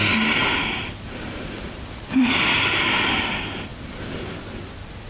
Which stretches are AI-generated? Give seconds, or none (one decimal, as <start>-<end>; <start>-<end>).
0.4-3.3